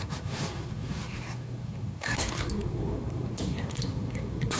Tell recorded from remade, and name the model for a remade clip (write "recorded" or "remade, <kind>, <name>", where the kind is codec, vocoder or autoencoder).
remade, codec, SNAC